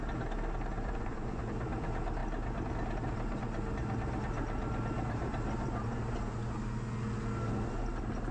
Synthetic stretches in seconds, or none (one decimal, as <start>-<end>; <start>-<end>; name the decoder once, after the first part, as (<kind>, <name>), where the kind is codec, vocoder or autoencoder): 0.8-1.4 (vocoder, Vocos)